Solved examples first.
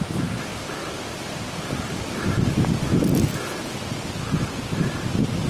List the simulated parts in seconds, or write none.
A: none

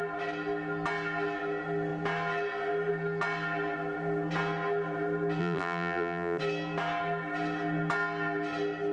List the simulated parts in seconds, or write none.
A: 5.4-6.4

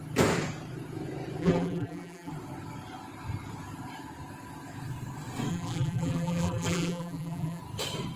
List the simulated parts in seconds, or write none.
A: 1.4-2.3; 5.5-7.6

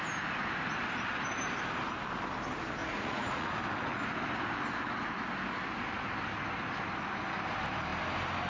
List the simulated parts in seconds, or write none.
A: 2.8-3.5

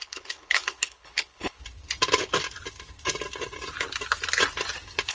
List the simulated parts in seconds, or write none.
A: 0.0-1.6